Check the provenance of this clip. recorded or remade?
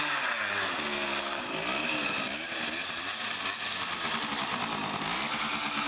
recorded